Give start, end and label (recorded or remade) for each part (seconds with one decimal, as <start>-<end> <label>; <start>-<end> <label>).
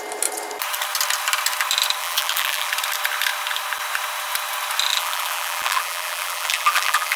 0.0-2.0 recorded; 2.0-2.7 remade; 2.7-4.9 recorded; 4.9-7.2 remade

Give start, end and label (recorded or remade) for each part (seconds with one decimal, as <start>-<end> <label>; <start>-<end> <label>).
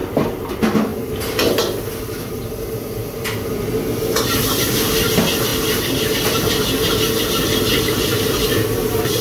0.0-0.9 remade; 0.9-2.1 recorded; 2.1-3.0 remade; 3.0-4.4 recorded; 4.4-5.5 remade; 5.5-7.2 recorded; 7.2-9.2 remade